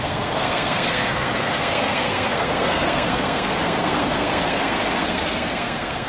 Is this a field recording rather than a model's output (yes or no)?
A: no